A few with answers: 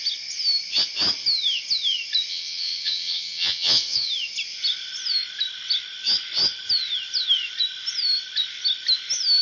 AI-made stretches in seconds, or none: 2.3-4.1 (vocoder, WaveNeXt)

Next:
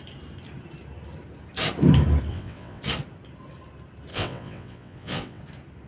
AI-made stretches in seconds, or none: 2.3-2.8 (vocoder, WaveNeXt); 4.1-5.4

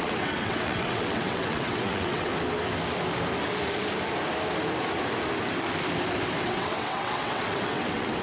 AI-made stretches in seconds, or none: 0.0-2.3 (vocoder, WaveNeXt); 6.4-8.2

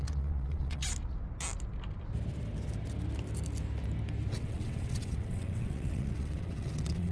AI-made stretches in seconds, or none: 0.0-0.8 (vocoder, WaveNeXt); 4.3-7.1

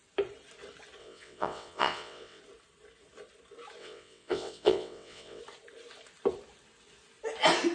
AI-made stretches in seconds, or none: 1.0-2.4 (vocoder, WaveNeXt); 3.8-5.4

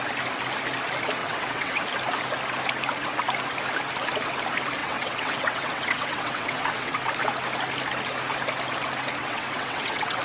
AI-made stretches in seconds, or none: 1.2-1.8 (vocoder, WaveNeXt); 4.8-7.1; 9.2-10.2

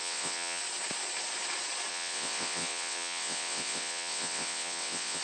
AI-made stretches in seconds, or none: 0.0-0.6 (vocoder, WaveNeXt); 1.9-5.2